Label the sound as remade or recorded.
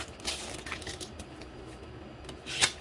recorded